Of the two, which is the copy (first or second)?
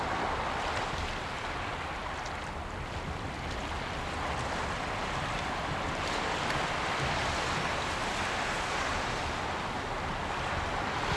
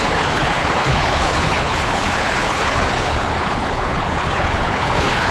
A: second